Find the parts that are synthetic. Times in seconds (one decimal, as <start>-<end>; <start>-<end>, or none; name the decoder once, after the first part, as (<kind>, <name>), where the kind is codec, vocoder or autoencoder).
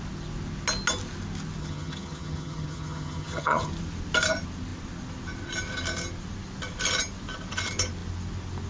1.6-3.7 (vocoder, HiFi-GAN)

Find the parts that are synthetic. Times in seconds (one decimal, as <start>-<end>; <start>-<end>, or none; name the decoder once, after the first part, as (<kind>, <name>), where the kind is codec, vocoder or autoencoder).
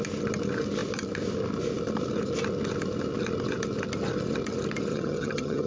4.9-5.7 (vocoder, HiFi-GAN)